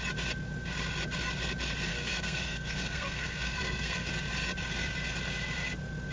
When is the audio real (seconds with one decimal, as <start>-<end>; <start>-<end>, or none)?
0.0-1.9; 4.1-6.1

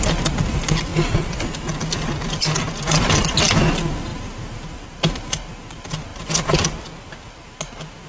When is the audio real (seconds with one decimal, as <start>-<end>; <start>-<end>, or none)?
0.0-8.1

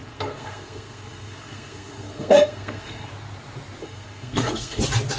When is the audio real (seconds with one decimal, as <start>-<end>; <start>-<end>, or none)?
3.1-3.8; 4.8-5.2

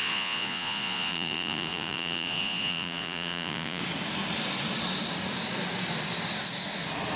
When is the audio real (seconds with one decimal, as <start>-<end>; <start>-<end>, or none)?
3.8-7.2

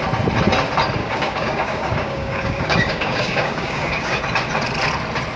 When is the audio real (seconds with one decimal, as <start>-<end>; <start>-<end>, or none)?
0.0-1.0; 4.2-5.4